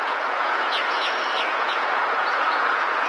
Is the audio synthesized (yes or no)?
yes